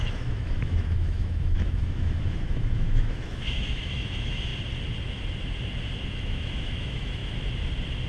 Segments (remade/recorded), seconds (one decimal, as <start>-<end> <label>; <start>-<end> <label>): 0.0-4.5 remade; 4.5-6.1 recorded; 6.1-7.2 remade; 7.2-8.1 recorded